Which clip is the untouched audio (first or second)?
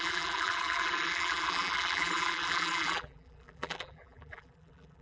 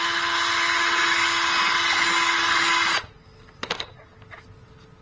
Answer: second